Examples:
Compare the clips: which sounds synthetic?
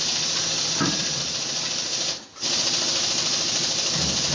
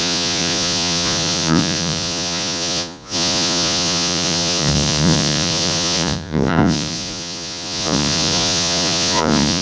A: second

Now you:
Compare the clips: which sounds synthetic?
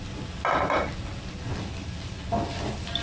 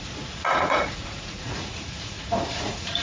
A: second